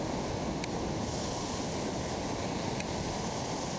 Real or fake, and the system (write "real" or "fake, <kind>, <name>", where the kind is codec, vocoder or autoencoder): real